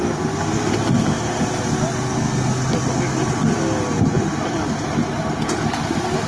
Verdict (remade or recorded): recorded